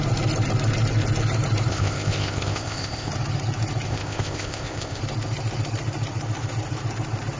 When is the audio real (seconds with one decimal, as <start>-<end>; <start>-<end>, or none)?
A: 0.0-1.7; 3.1-3.9; 5.0-7.4